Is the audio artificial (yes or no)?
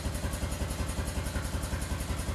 no